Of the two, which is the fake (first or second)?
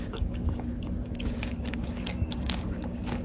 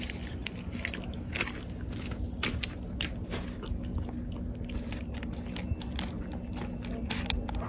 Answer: first